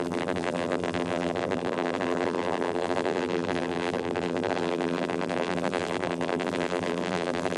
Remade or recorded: remade